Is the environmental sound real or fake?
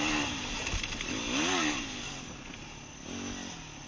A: real